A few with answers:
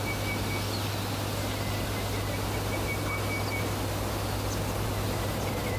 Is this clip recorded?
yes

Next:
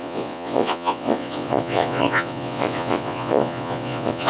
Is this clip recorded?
no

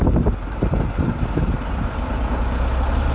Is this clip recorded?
yes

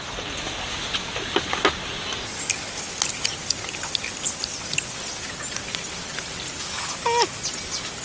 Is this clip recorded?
yes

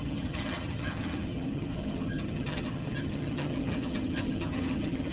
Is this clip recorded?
no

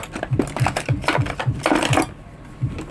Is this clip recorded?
yes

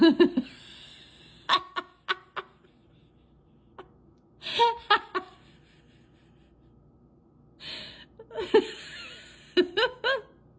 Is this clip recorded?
yes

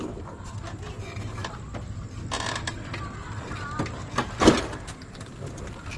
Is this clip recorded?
yes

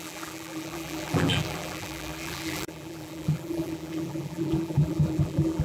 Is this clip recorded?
no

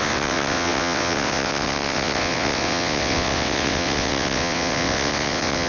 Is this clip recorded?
no